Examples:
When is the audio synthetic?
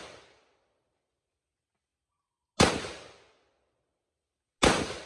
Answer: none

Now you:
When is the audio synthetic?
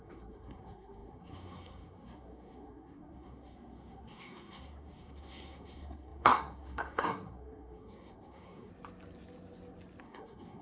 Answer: 0.0-8.7 (codec, SNAC); 10.0-10.6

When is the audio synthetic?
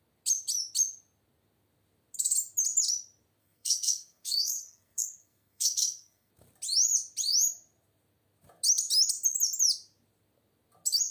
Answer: 3.4-6.3 (codec, SNAC)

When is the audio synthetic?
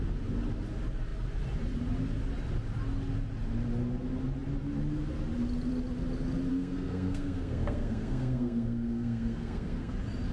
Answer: 6.5-9.9 (codec, SNAC)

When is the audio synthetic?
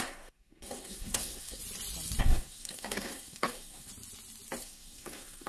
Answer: 0.0-1.6 (codec, SNAC); 2.2-3.9; 4.6-5.5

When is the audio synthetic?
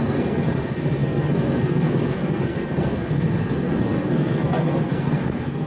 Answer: 0.0-5.7 (codec, SNAC)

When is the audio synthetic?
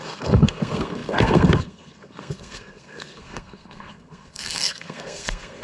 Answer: 0.0-5.6 (codec, SNAC)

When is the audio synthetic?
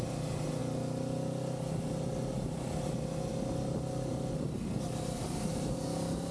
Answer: none